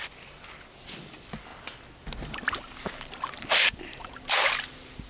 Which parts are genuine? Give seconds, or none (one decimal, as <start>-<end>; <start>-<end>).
1.5-3.5